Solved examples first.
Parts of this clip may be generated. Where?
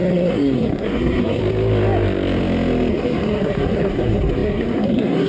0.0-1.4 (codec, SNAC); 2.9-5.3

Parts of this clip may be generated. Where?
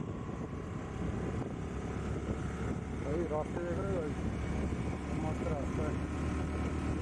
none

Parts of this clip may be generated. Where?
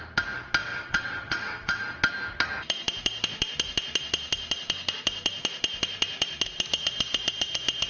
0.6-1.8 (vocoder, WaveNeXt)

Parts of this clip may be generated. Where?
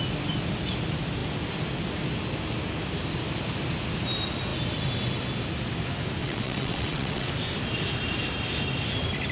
6.2-7.3 (vocoder, WaveNeXt)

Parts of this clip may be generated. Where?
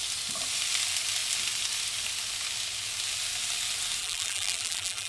4.0-5.1 (vocoder, BigVGAN v2)